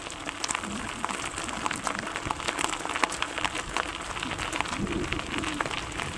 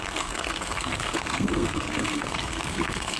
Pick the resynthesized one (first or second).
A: second